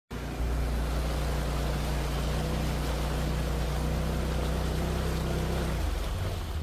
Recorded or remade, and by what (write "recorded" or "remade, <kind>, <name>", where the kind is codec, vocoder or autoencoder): recorded